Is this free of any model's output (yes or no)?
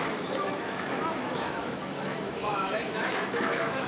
no